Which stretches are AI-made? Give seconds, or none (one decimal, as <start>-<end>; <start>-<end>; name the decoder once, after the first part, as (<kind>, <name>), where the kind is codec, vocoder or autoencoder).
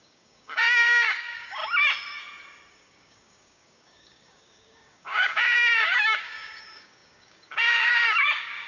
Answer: 0.0-1.6 (codec, DAC); 2.7-8.7